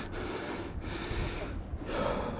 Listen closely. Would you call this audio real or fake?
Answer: real